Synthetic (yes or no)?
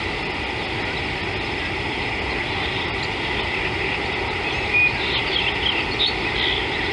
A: no